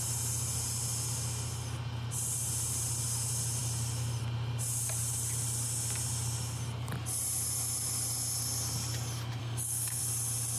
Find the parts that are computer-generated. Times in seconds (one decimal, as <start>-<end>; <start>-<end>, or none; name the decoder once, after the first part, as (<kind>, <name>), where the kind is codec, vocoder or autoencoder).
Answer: 9.4-10.0 (codec, SNAC)